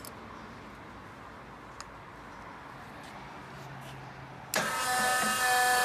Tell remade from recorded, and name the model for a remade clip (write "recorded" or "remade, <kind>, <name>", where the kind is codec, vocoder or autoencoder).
recorded